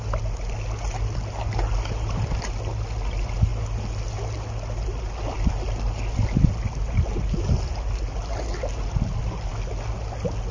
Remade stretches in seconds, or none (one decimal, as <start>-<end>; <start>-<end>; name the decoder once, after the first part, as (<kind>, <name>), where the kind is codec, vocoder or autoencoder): none